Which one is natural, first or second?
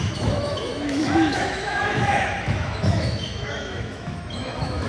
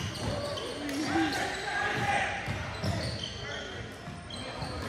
second